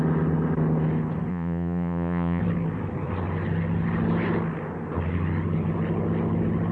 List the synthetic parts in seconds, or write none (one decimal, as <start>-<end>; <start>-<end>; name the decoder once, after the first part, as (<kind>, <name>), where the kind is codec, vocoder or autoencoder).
1.3-2.4 (vocoder, Vocos)